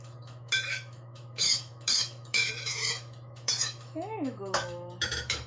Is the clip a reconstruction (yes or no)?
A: yes